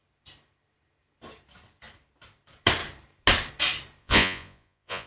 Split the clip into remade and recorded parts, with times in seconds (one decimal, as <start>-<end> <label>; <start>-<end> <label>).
0.0-4.0 recorded; 4.0-5.1 remade